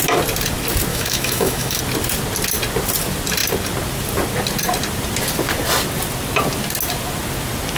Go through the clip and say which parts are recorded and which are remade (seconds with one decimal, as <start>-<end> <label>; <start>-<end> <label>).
0.0-0.9 recorded; 0.9-1.8 remade; 1.8-7.8 recorded